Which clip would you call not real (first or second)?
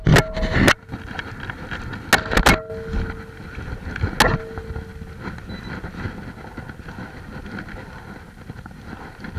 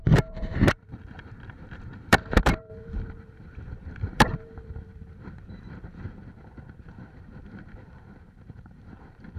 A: second